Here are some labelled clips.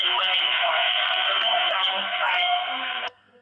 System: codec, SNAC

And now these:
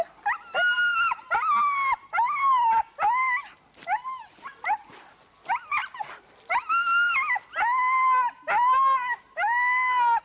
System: none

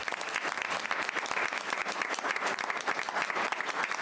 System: none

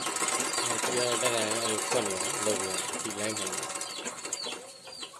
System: none